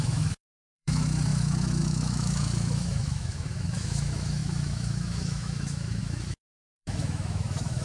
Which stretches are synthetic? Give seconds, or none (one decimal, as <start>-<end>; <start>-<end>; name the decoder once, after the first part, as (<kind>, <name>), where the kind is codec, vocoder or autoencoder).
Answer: 0.0-7.8 (autoencoder, DAC-VAE)